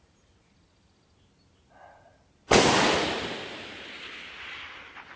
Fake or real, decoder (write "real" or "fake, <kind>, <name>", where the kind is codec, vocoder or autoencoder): real